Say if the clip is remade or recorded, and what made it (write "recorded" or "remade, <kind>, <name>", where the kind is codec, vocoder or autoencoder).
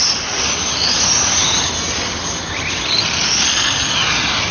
recorded